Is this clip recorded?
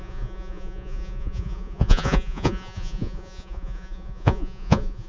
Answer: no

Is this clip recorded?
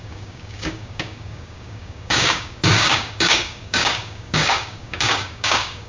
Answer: no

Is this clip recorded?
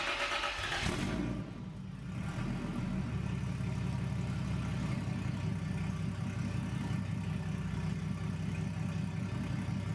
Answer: yes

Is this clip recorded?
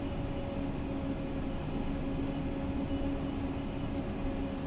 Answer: yes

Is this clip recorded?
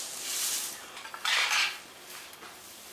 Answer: yes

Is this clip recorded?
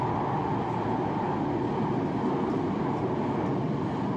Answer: no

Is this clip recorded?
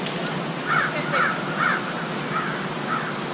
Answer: yes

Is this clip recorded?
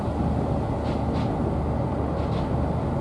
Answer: yes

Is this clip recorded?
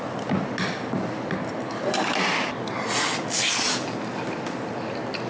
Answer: yes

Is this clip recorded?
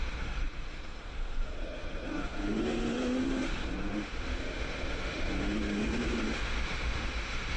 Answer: no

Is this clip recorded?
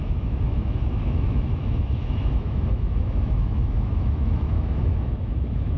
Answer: no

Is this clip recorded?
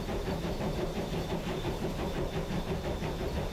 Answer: no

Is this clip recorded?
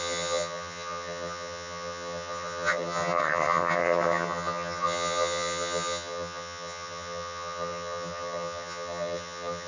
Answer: no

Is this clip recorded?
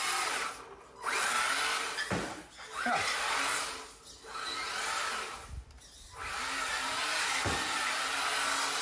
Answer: yes